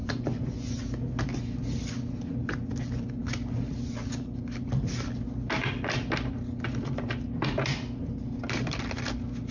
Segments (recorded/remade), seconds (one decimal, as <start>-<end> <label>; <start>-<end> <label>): 0.0-0.8 remade; 0.8-9.5 recorded